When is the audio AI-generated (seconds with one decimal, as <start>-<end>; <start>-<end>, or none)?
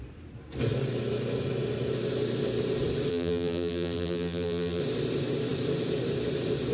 3.1-4.8